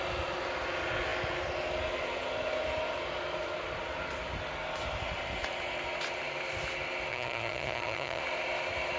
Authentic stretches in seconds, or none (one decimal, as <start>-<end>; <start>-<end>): 0.0-7.1; 8.2-9.0